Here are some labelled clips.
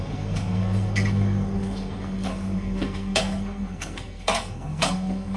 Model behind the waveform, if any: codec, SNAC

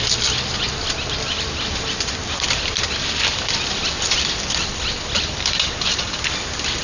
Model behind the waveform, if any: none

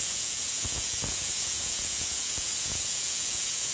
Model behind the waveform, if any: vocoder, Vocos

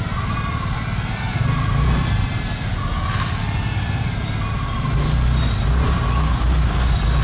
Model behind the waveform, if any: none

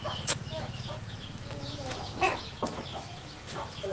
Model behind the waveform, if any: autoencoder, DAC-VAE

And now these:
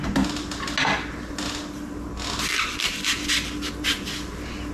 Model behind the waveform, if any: none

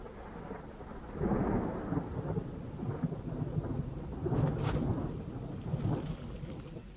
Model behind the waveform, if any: none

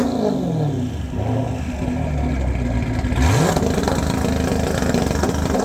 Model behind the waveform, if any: none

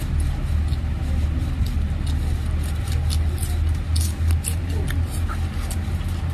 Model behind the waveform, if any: none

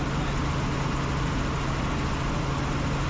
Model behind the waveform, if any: none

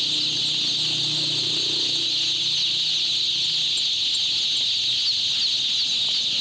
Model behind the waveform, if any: none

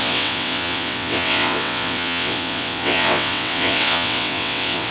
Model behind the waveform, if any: vocoder, WaveNeXt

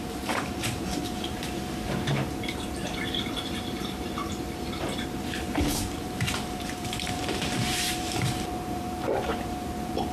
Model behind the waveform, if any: vocoder, BigVGAN v2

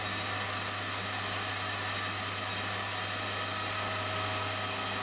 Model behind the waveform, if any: none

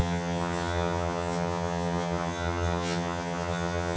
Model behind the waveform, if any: vocoder, HiFi-GAN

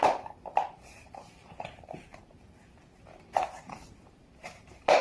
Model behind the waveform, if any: vocoder, BigVGAN v2